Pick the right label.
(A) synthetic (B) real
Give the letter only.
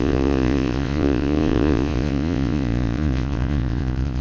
A